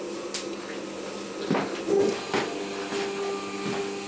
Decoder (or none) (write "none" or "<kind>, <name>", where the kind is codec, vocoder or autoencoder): none